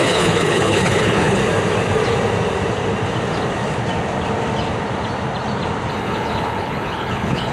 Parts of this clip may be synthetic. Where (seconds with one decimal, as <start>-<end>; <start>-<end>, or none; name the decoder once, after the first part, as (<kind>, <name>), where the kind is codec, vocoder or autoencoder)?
0.0-1.4 (codec, HILCodec); 5.9-7.5